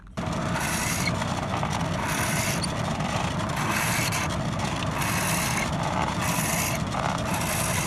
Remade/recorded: recorded